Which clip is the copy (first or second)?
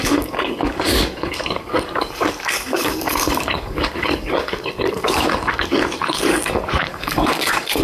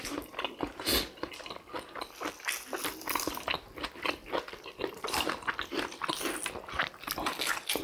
first